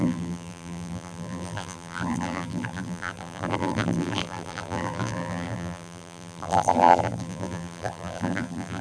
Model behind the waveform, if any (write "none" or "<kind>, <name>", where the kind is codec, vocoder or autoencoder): vocoder, BigVGAN v2